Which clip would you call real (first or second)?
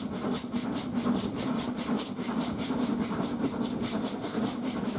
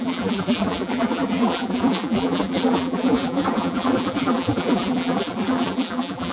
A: first